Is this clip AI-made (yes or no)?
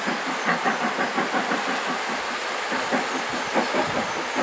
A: no